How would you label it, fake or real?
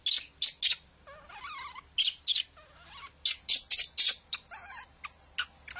real